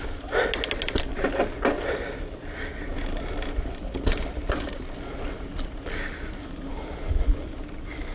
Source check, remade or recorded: recorded